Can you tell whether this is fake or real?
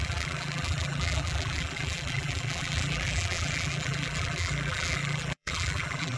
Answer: fake